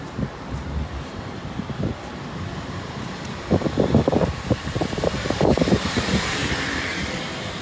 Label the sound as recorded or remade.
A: remade